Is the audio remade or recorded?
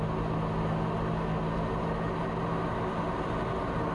recorded